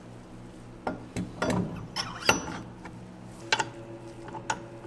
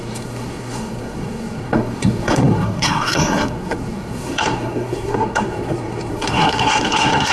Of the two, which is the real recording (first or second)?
first